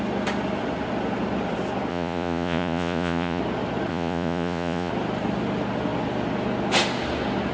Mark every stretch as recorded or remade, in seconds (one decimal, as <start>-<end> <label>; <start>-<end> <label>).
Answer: 0.0-1.9 recorded; 1.9-3.4 remade; 3.4-3.9 recorded; 3.9-4.9 remade; 4.9-7.5 recorded